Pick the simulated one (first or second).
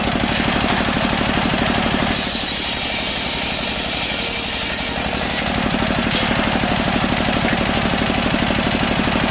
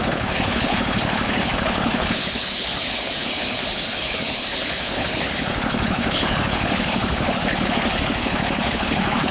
second